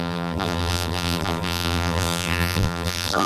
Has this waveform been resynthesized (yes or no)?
yes